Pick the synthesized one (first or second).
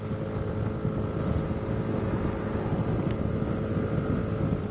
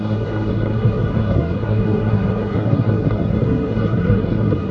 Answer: second